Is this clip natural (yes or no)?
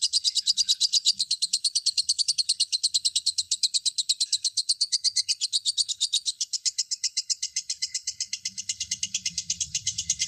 no